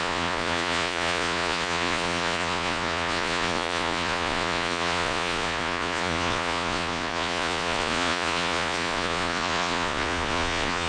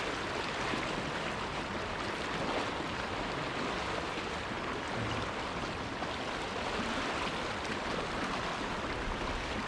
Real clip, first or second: second